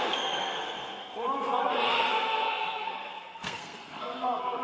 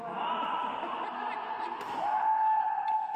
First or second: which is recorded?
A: second